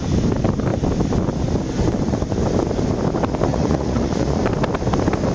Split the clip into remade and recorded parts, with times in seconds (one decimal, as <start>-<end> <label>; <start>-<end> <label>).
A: 0.0-3.5 recorded; 3.5-4.4 remade; 4.4-5.3 recorded